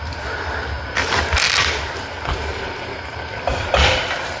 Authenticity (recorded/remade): recorded